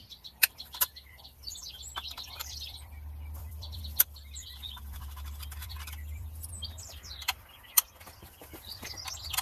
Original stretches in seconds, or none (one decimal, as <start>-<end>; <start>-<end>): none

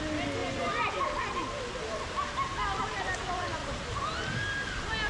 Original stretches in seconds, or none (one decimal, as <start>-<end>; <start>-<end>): 0.0-0.4; 1.0-5.1

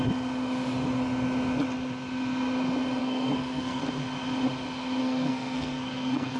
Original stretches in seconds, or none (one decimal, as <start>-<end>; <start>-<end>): 0.0-3.0; 3.8-5.0

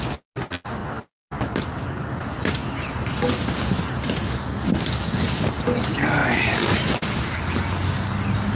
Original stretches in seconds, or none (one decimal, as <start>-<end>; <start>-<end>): 0.0-8.6